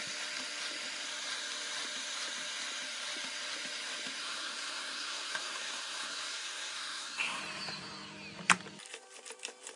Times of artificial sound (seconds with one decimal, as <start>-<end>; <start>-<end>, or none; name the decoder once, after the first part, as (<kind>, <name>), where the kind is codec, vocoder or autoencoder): 4.2-7.4 (codec, SNAC)